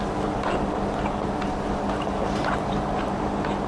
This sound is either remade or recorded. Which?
recorded